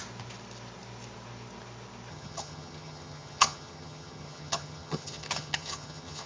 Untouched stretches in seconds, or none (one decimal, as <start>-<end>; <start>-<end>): 0.0-2.1